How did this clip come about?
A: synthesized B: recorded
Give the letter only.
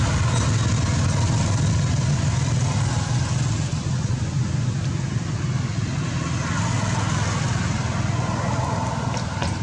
B